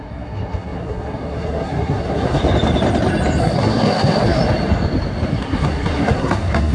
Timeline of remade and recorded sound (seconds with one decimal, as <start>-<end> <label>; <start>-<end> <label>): 0.0-2.4 remade; 2.4-3.4 recorded; 3.4-4.4 remade; 4.4-5.3 recorded; 5.3-6.7 remade